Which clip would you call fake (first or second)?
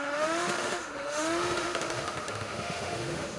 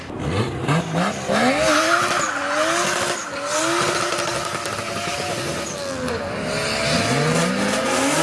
first